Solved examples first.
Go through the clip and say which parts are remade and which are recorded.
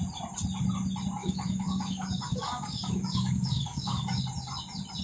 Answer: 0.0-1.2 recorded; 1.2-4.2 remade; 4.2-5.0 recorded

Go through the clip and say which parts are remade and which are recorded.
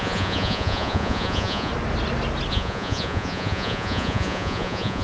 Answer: 0.0-1.7 remade; 1.7-2.5 recorded; 2.5-5.0 remade